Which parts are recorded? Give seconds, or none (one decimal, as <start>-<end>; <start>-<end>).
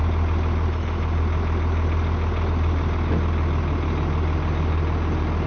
0.0-5.5